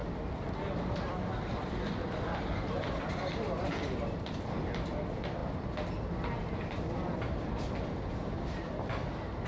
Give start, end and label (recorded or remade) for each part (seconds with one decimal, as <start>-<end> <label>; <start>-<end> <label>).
0.0-5.4 remade; 5.4-6.4 recorded; 6.4-9.5 remade